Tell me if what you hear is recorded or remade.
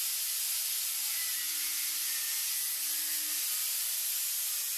recorded